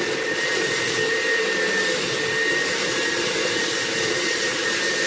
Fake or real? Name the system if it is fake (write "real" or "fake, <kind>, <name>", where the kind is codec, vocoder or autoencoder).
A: fake, vocoder, BigVGAN v2